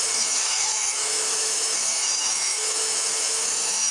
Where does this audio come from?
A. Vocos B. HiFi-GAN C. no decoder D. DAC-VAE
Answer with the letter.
D